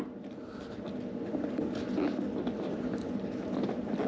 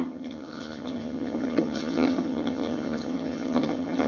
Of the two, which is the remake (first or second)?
second